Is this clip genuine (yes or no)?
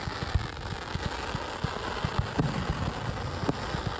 yes